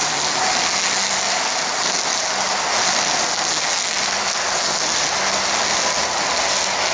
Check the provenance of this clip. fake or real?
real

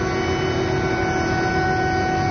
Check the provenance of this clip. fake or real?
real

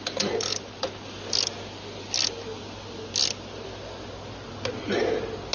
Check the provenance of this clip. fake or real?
real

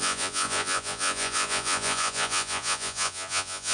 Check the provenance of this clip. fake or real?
fake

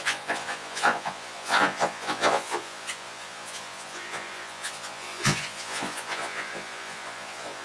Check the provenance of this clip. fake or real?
fake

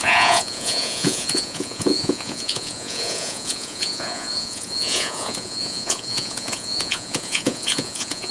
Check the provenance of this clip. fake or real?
fake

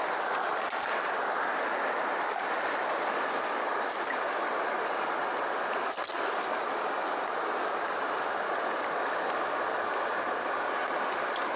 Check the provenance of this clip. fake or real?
real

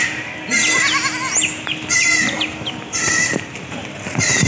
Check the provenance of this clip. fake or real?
real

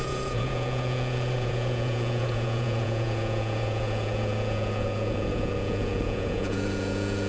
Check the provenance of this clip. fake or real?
fake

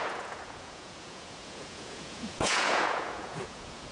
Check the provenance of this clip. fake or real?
fake